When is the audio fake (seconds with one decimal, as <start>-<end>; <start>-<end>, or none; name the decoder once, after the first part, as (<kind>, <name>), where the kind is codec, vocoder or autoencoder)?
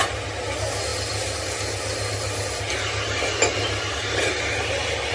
none